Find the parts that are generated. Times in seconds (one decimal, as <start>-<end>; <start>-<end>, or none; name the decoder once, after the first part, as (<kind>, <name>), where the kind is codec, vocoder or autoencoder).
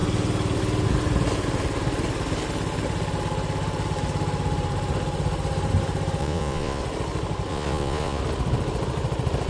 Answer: 6.2-6.8 (vocoder, Vocos); 7.5-8.2